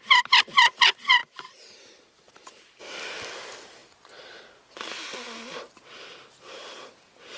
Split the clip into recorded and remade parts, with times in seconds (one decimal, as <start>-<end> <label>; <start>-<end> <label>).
0.0-1.2 recorded; 1.2-2.8 remade; 2.8-7.4 recorded